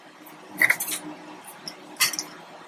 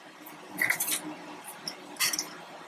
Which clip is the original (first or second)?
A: first